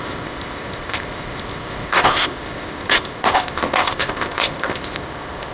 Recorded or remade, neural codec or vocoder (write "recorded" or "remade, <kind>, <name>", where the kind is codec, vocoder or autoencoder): remade, codec, ZipCodec